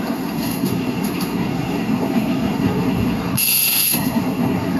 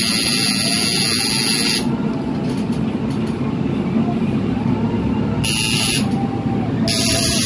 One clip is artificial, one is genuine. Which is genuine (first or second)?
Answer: second